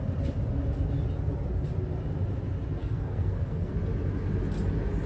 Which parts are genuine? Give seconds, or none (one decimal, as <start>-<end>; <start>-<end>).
0.0-2.8; 3.7-5.1